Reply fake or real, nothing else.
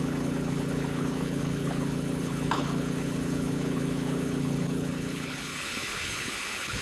fake